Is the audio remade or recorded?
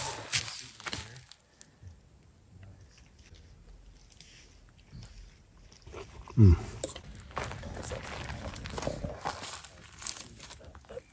recorded